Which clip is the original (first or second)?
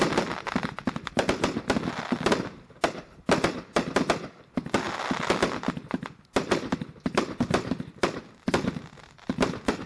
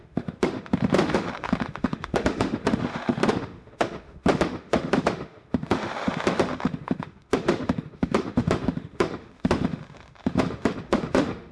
first